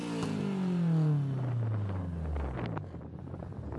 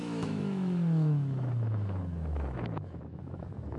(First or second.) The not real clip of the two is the second